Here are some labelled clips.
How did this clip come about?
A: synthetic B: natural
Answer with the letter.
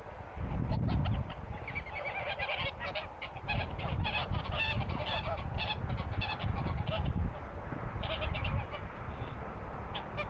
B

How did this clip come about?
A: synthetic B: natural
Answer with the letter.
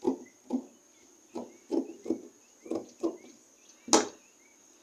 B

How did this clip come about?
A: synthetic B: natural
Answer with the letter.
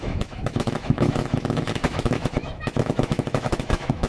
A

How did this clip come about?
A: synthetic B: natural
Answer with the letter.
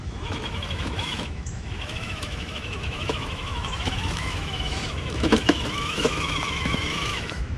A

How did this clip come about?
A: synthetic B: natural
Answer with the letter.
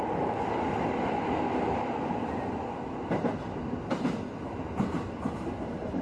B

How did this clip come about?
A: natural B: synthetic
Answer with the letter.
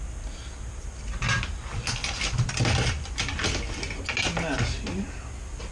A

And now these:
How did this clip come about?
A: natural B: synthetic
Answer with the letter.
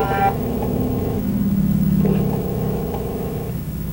B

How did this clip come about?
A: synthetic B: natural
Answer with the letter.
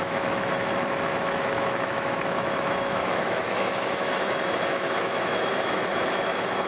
A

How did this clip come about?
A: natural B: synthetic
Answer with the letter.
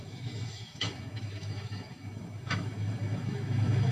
B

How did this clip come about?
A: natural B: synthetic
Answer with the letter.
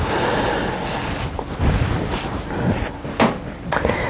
A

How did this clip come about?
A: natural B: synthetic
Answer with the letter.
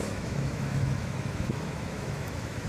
B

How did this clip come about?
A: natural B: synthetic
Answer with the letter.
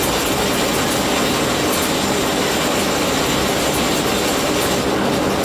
A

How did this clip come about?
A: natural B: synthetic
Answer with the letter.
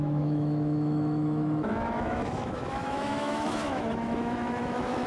B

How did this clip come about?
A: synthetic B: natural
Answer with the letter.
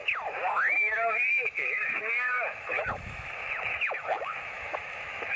A